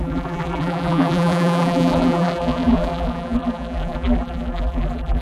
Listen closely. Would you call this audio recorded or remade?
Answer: remade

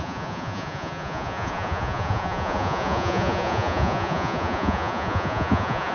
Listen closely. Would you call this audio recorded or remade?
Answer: remade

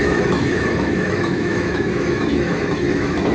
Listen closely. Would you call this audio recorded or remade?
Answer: remade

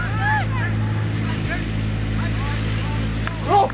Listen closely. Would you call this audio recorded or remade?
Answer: recorded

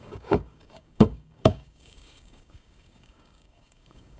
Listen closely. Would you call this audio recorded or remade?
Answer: remade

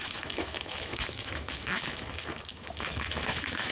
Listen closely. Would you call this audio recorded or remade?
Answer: remade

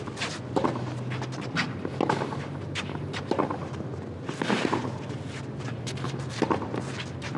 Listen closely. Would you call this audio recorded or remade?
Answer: recorded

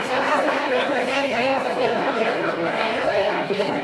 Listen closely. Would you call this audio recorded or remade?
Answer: remade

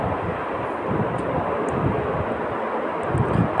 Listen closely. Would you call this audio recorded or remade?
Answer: recorded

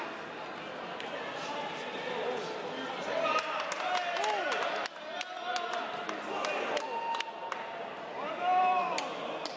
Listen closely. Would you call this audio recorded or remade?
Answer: recorded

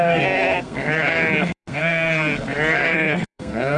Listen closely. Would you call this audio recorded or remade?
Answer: remade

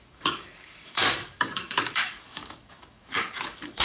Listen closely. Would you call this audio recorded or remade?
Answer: remade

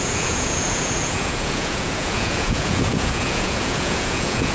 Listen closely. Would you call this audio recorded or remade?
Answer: remade